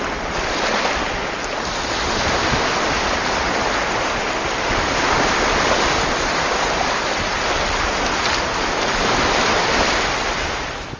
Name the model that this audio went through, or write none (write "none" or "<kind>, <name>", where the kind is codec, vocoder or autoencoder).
none